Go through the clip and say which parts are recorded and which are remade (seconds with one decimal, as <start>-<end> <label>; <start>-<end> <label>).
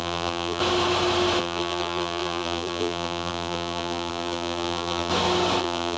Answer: 0.0-0.6 remade; 0.6-1.4 recorded; 1.4-5.1 remade; 5.1-5.6 recorded; 5.6-6.0 remade